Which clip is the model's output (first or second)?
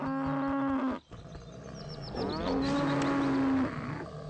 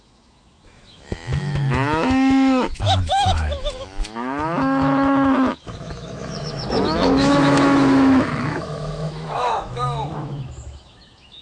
second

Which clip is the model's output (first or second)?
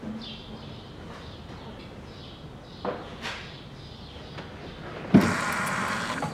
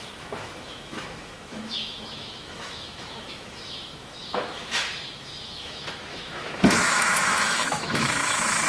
second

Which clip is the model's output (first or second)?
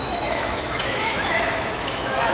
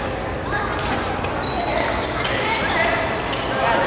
first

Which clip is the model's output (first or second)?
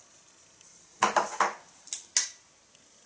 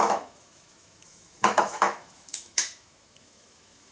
second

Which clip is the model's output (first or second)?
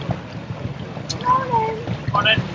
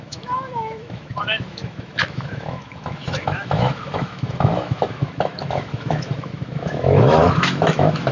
second